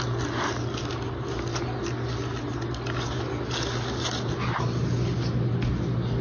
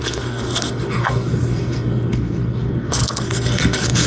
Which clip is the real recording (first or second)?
first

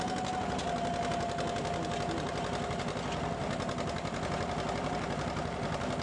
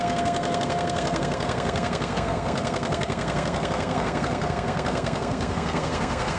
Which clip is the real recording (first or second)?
first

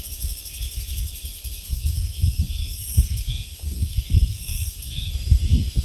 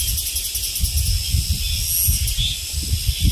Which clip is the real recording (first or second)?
second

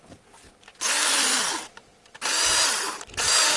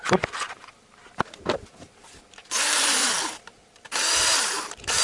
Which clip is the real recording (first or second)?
first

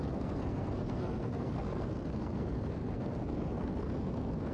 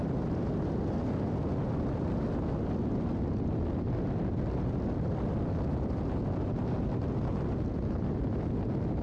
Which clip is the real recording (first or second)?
second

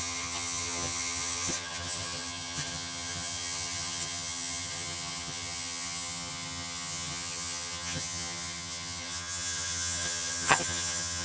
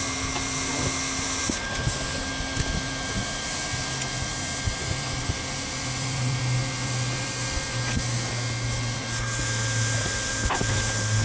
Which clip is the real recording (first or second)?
second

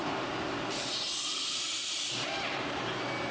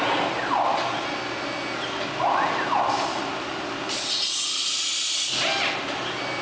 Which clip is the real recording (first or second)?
second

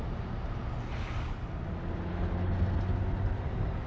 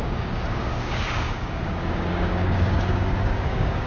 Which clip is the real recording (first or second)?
first